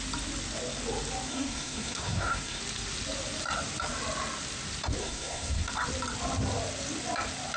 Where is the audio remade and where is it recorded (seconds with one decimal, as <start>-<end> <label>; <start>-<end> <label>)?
0.0-1.3 recorded; 1.3-2.6 remade; 2.6-5.0 recorded; 5.0-5.7 remade; 5.7-7.6 recorded